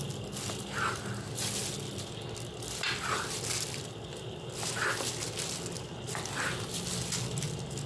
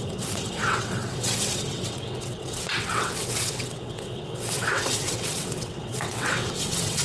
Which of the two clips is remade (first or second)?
second